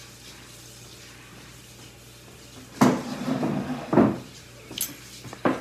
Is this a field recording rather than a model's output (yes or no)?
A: yes